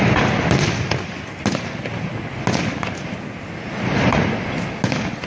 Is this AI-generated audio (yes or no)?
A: no